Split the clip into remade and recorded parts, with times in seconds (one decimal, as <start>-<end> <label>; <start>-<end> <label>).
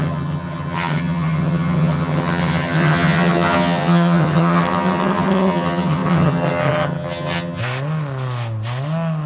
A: 0.0-7.6 remade; 7.6-9.3 recorded